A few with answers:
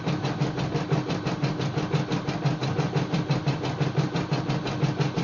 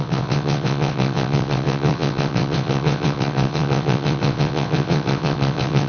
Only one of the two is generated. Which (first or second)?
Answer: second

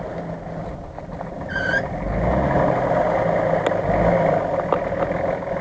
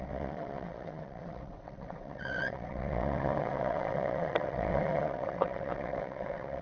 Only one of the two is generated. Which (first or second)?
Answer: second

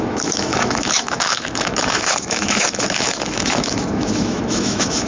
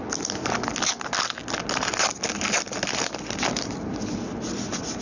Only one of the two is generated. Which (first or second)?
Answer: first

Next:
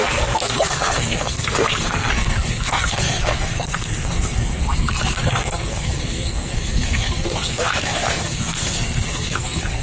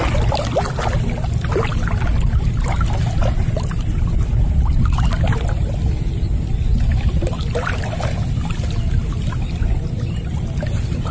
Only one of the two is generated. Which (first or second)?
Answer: first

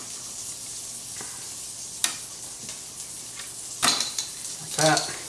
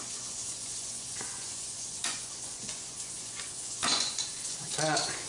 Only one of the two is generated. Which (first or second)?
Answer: second